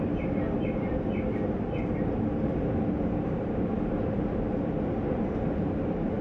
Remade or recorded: remade